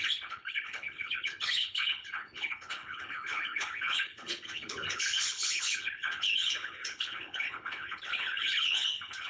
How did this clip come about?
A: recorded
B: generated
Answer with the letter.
B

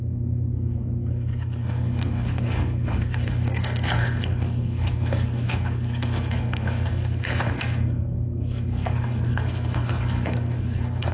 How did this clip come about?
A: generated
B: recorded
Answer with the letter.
A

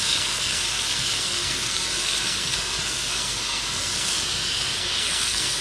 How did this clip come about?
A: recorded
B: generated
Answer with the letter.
B